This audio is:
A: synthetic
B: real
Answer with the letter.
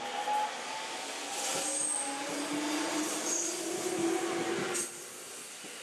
B